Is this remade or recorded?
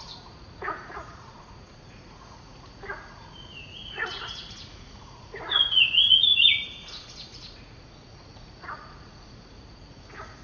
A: remade